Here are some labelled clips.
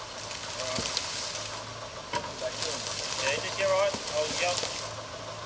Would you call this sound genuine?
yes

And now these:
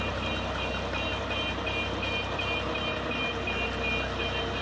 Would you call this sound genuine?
yes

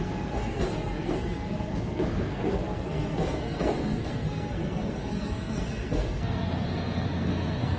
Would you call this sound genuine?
no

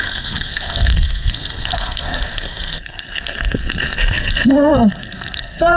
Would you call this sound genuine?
no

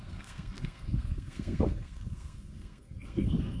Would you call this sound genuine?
no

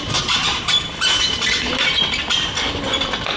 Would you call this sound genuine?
yes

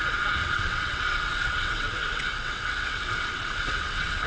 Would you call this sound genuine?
no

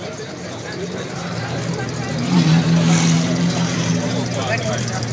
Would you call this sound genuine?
no